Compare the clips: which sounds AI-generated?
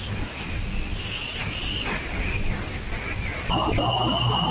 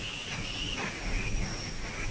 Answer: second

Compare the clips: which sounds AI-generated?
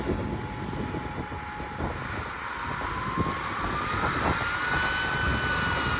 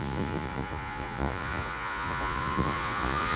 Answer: second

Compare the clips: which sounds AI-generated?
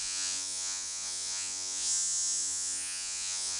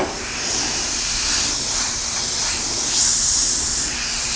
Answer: first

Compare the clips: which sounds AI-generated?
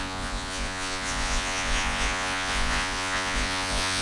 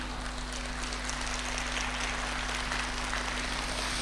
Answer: first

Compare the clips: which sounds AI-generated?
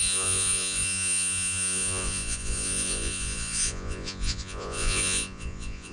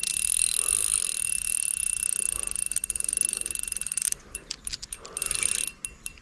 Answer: first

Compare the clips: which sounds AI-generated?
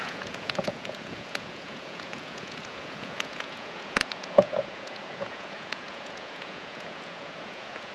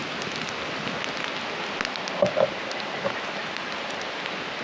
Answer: first